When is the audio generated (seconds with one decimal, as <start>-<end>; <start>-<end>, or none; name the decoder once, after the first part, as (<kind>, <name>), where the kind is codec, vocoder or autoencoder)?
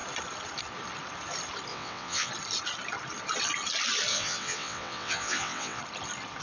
1.7-2.3 (vocoder, WaveNeXt); 4.1-5.8